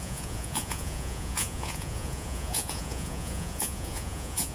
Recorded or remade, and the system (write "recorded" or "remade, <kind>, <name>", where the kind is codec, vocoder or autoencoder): remade, vocoder, Vocos